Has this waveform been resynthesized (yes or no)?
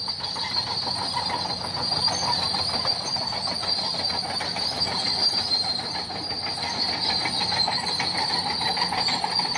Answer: no